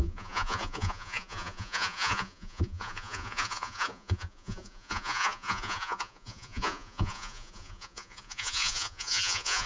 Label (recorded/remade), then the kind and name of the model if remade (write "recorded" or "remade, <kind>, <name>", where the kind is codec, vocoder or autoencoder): remade, vocoder, Vocos